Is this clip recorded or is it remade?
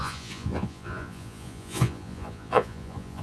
remade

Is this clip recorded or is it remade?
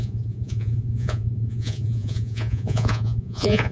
remade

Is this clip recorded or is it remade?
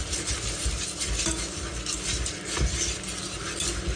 recorded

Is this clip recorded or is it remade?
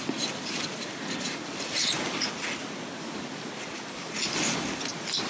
recorded